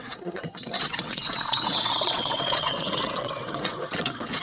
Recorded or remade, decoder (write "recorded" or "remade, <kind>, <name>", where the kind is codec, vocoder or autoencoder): remade, vocoder, WaveNeXt